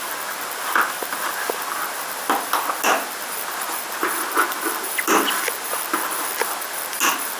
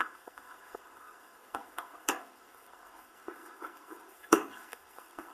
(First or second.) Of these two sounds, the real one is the first